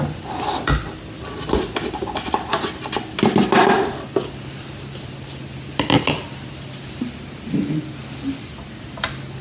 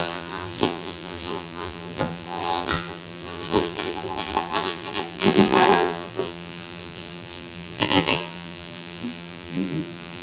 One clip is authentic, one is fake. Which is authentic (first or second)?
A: first